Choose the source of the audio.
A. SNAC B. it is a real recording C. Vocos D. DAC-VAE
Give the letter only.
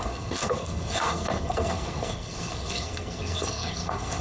A